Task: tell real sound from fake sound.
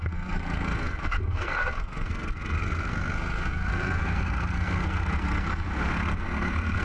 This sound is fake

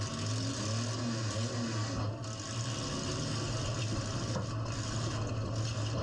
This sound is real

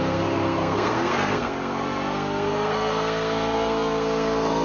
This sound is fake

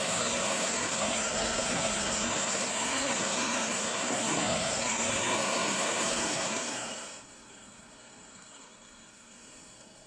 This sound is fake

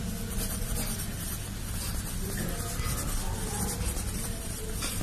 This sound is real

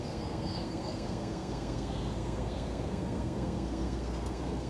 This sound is fake